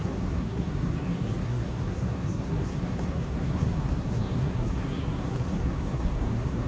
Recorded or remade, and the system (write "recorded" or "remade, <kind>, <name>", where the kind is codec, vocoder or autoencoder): remade, codec, SNAC